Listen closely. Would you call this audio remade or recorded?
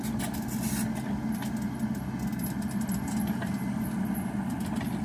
recorded